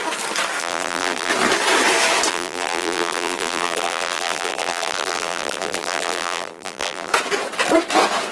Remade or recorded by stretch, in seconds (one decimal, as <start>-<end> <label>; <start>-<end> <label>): 0.0-0.6 recorded; 0.6-1.3 remade; 1.3-2.3 recorded; 2.3-7.1 remade; 7.1-8.3 recorded